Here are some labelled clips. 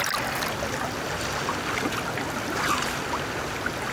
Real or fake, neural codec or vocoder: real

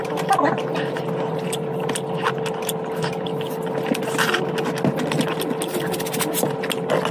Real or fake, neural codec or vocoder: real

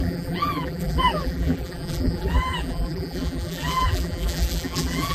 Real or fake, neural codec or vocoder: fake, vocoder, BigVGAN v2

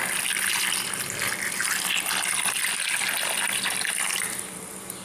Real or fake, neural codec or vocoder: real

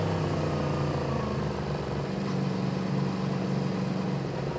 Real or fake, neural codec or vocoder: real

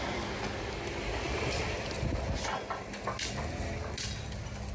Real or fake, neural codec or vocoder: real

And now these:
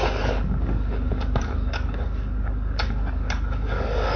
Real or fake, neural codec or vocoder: fake, codec, DAC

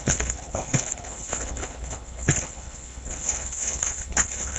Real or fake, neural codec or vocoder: fake, codec, HILCodec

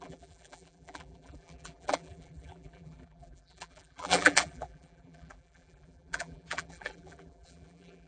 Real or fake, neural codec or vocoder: fake, vocoder, BigVGAN v2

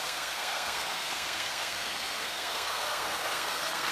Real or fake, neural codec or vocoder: fake, codec, SNAC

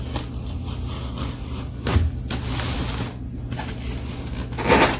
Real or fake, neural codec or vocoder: real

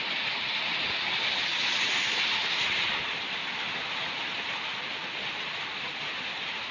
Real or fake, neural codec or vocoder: real